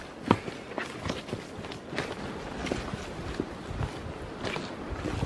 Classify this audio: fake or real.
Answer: real